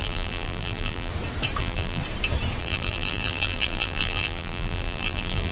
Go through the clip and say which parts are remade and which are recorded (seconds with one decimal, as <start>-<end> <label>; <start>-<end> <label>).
0.0-1.1 remade; 1.1-1.6 recorded; 1.6-2.0 remade; 2.0-2.6 recorded; 2.6-5.5 remade